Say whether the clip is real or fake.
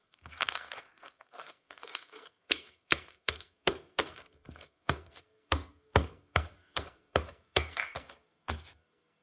fake